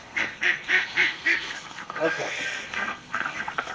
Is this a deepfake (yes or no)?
yes